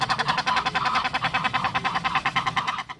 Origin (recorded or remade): recorded